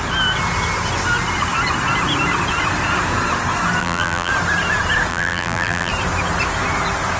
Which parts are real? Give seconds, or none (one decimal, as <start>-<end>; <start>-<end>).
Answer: 0.0-3.8; 4.3-5.1; 5.9-7.2